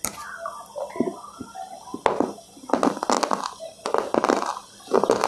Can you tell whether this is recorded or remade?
recorded